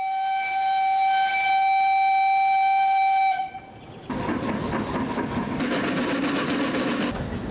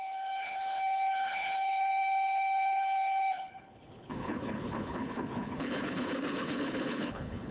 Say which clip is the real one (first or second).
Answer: first